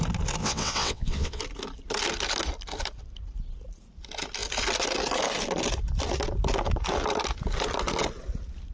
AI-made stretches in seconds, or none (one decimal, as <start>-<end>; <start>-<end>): 0.4-1.4